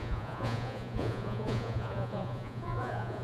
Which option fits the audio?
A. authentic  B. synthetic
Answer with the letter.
B